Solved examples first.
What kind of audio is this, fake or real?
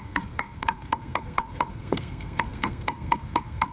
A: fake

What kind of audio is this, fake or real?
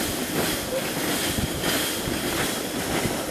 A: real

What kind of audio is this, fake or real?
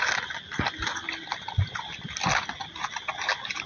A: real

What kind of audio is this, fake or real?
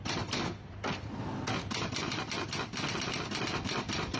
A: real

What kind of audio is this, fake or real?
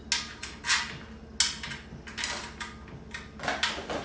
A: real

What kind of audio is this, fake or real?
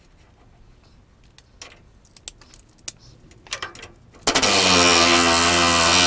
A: real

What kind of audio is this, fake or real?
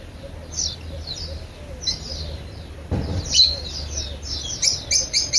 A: real